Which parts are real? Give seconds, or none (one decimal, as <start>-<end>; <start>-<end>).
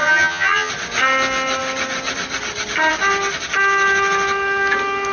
0.7-5.1